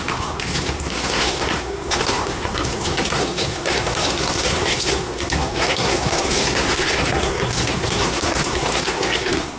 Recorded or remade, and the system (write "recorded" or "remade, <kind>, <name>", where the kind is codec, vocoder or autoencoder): remade, codec, SNAC